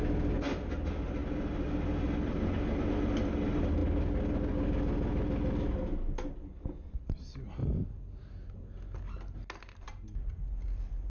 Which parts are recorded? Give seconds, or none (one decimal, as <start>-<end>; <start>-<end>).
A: 0.0-11.1